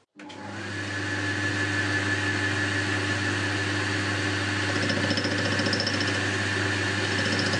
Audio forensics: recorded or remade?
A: recorded